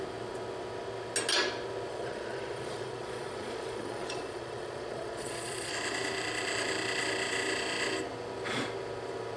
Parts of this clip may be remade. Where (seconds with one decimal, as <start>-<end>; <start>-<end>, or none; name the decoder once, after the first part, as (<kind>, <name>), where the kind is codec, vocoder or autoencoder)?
1.9-5.7 (vocoder, Vocos)